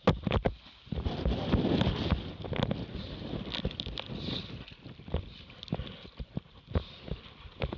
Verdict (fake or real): real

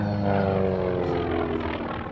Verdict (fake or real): real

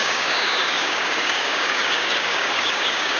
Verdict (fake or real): fake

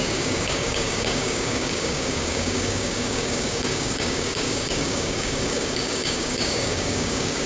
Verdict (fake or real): fake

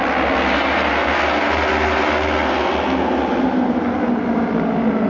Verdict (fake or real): real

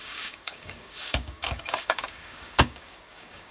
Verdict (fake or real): fake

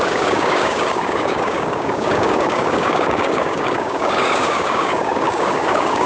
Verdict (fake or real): fake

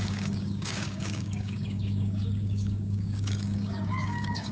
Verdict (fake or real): fake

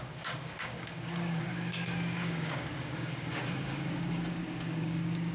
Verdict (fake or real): fake